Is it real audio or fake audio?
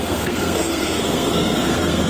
fake